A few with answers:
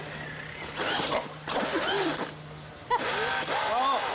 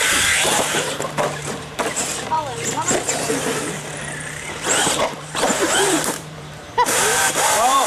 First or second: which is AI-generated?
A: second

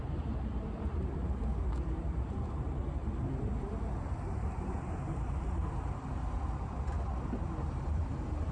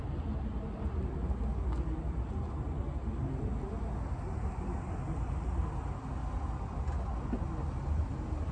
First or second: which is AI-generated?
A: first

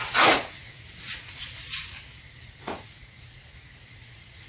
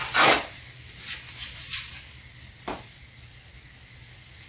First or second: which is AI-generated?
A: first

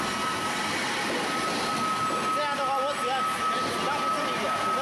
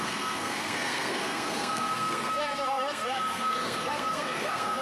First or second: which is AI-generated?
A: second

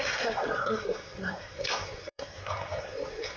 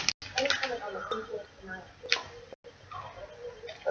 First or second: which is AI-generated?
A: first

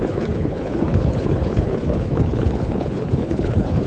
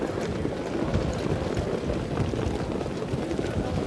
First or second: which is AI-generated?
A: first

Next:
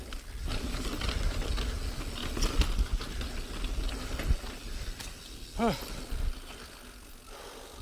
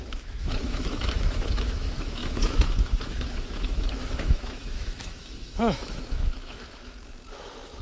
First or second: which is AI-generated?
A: second